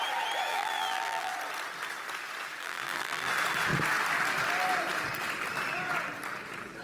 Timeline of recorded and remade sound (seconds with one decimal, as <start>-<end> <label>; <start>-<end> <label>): 0.0-0.5 recorded; 0.5-1.3 remade; 1.3-2.6 recorded; 2.6-3.3 remade; 3.3-6.8 recorded

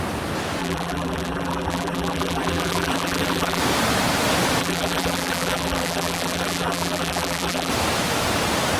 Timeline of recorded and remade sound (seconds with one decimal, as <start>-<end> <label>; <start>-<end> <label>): 0.0-0.6 recorded; 0.6-3.6 remade; 3.6-4.6 recorded; 4.6-7.7 remade; 7.7-8.8 recorded

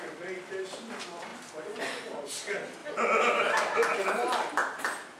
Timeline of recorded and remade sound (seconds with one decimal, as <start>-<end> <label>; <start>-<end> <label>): 0.0-5.2 recorded

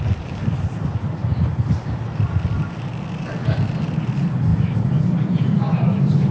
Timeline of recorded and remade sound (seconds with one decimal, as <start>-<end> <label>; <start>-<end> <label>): 0.0-1.2 recorded; 1.2-3.3 remade; 3.3-6.3 recorded

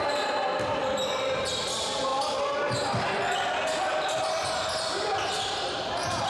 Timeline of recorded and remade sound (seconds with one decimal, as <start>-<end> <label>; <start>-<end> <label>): 0.0-0.8 remade; 0.8-1.3 recorded; 1.3-2.1 remade; 2.1-5.4 recorded; 5.4-6.3 remade